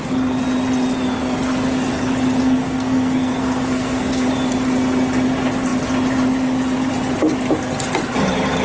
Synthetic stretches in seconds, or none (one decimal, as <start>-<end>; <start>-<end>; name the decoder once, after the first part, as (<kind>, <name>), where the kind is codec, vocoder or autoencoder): 2.4-4.3 (codec, SNAC)